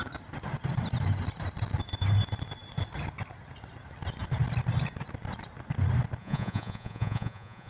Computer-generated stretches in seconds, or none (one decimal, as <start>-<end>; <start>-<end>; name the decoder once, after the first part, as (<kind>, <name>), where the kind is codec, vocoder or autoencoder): 6.2-7.7 (vocoder, Vocos)